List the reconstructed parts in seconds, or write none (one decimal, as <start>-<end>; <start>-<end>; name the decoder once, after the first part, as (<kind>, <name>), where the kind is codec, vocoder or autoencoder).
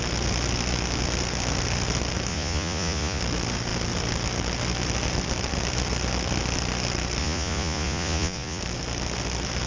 2.3-3.2 (vocoder, Vocos); 7.2-8.6